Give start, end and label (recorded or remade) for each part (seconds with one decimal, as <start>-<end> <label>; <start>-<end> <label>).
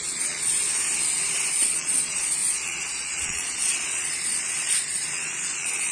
0.0-0.5 remade; 0.5-1.5 recorded; 1.5-5.9 remade